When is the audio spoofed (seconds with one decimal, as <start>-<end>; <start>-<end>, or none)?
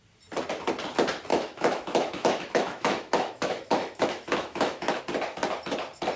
1.3-5.0